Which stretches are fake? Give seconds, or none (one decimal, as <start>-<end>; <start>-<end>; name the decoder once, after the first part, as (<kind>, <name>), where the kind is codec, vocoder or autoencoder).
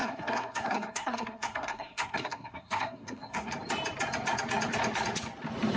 0.0-3.5 (codec, SNAC)